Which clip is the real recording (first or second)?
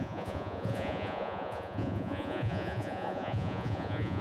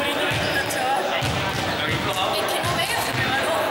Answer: second